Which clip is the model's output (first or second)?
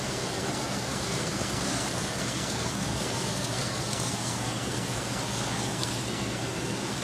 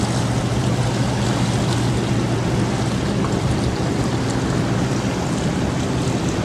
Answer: first